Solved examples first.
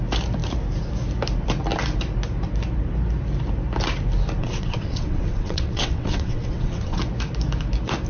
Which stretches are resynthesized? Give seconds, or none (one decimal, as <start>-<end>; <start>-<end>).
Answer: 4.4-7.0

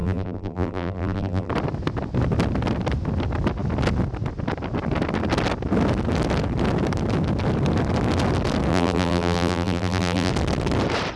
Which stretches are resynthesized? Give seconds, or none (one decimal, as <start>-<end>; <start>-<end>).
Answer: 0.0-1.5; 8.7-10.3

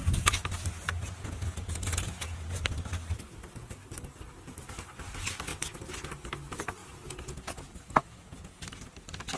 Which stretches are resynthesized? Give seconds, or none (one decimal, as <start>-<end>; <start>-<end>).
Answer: 1.0-2.5; 6.8-8.6

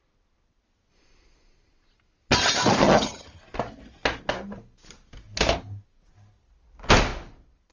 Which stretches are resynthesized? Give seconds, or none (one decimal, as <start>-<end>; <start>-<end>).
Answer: 2.8-3.4